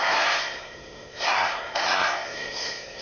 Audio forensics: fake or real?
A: fake